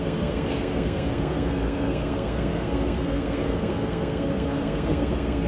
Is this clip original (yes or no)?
no